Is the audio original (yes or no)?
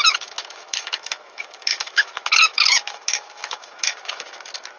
no